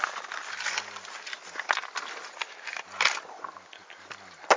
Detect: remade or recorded recorded